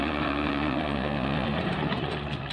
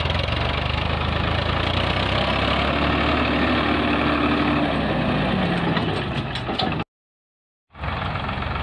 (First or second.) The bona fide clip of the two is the second